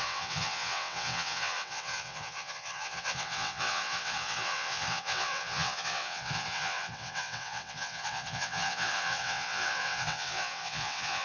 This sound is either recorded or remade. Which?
remade